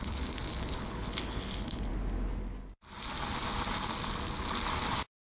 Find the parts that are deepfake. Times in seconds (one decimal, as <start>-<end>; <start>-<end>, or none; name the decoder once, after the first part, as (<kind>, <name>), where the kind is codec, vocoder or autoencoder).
0.0-1.9 (codec, HILCodec)